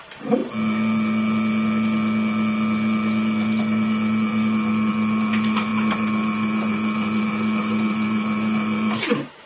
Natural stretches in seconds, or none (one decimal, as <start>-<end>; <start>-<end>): 0.0-9.5